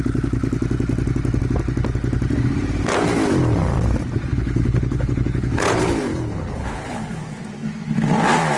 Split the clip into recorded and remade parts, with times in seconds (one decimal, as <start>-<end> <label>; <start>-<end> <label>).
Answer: 0.0-4.3 recorded; 4.3-7.1 remade; 7.1-8.6 recorded